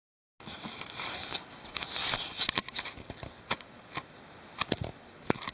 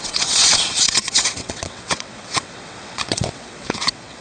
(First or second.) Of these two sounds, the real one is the first